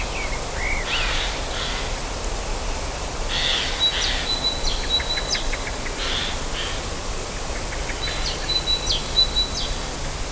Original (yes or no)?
yes